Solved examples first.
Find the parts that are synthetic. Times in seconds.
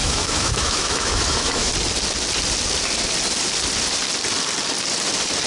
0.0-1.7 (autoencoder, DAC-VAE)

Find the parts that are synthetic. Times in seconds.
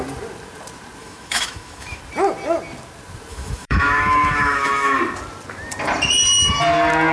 1.0-2.0 (autoencoder, DAC-VAE); 3.3-5.0